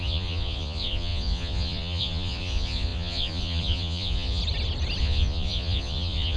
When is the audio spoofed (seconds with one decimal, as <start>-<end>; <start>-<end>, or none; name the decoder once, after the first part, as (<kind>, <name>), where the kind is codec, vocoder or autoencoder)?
0.0-4.4 (vocoder, Vocos); 5.0-6.4